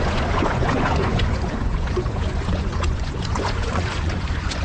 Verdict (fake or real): fake